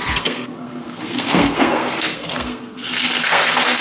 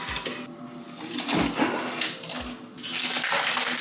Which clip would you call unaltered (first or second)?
second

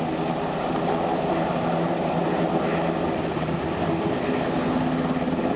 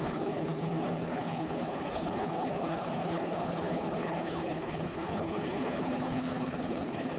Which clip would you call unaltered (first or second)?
first